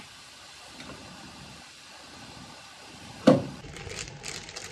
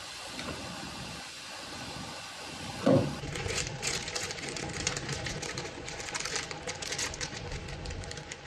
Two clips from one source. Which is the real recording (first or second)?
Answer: first